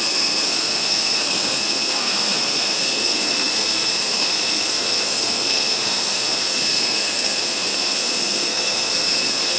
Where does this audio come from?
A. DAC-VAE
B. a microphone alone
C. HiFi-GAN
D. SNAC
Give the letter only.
D